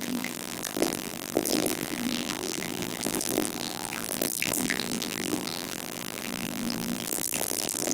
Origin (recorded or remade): remade